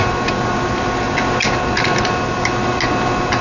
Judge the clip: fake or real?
real